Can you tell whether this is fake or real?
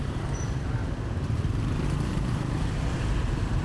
fake